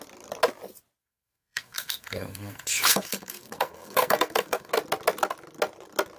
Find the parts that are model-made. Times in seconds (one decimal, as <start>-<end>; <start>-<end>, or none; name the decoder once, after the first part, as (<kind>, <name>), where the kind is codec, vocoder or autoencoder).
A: 1.0-4.7 (codec, SNAC)